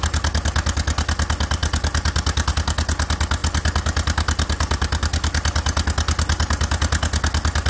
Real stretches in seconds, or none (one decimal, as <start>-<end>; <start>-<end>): 0.0-7.7